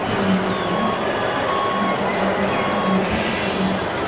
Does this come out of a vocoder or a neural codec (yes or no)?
no